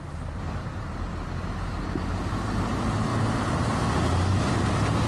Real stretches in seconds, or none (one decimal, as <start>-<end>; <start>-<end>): 0.0-5.1

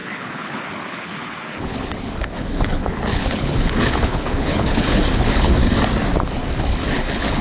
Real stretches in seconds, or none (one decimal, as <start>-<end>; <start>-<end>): 5.6-6.9

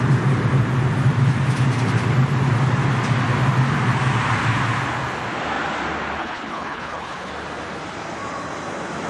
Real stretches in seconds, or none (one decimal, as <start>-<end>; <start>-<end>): 0.0-6.2; 7.3-9.1

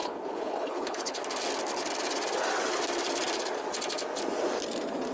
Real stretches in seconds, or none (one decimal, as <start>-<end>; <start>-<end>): 1.2-5.1

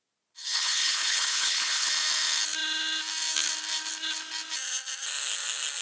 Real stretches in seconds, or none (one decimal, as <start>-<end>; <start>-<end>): 0.0-0.4; 1.9-5.8

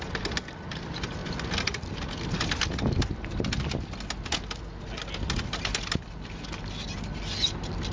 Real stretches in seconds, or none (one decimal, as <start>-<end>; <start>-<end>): 0.0-7.9